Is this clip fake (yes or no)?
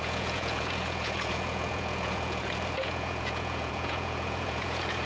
yes